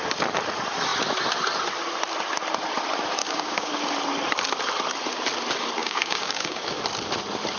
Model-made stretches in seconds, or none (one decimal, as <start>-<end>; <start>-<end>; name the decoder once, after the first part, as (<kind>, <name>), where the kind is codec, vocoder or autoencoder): 3.2-3.7 (codec, DAC); 5.8-6.8